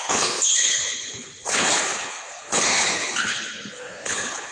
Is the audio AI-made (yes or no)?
yes